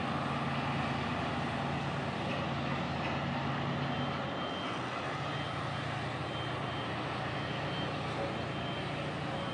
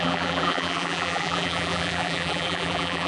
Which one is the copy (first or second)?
second